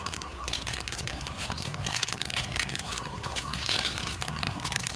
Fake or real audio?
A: fake